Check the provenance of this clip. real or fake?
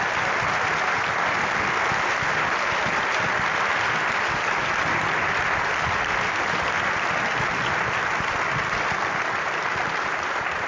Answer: real